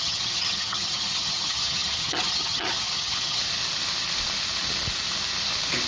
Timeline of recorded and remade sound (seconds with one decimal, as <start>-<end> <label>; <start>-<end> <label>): 0.0-3.4 remade; 3.4-5.9 recorded